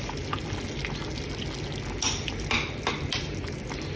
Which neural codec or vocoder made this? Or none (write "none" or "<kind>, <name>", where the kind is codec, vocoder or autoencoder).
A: none